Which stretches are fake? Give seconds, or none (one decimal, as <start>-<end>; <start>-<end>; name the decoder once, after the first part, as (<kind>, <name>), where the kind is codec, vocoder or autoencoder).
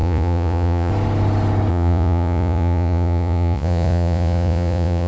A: 0.0-0.9 (vocoder, Vocos); 1.7-5.1